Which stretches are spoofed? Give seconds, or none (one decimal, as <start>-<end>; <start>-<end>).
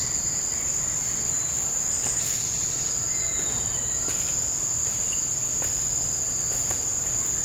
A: none